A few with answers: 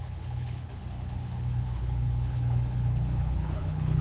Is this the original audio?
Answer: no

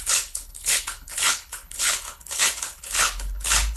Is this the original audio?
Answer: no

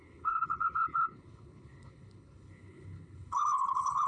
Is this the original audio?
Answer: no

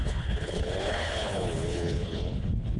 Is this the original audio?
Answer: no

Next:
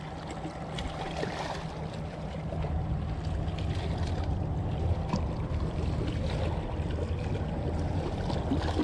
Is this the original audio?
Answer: yes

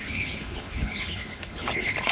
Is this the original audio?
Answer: no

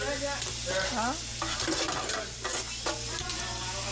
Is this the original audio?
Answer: yes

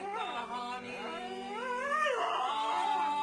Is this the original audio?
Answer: yes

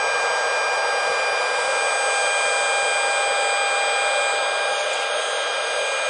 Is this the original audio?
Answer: yes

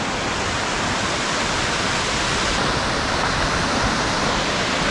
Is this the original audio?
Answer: yes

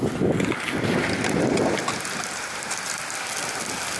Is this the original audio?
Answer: yes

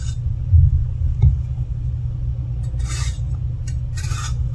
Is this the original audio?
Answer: yes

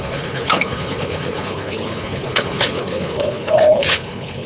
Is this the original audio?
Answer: no